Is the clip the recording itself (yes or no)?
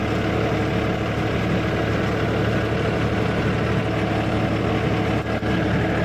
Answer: yes